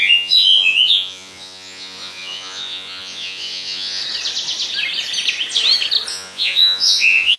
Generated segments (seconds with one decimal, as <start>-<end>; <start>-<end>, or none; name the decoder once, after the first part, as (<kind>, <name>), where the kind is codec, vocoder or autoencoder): 0.0-4.0 (vocoder, Vocos); 6.1-7.4